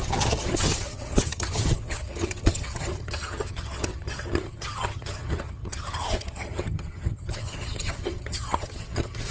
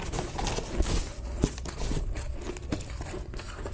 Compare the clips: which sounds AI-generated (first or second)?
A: first